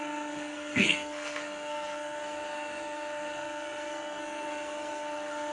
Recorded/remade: remade